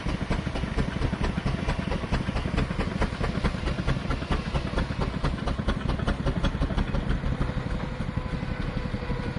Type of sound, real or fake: real